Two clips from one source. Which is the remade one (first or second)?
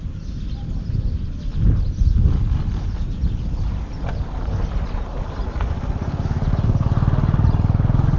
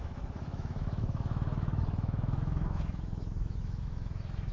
second